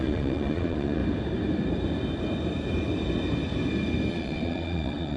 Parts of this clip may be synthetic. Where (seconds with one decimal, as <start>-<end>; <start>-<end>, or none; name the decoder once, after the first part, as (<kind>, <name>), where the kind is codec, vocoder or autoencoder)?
0.0-1.0 (vocoder, Vocos); 4.1-5.2